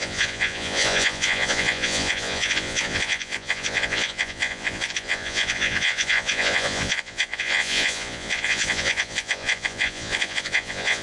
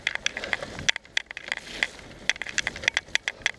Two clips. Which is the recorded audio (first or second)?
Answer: second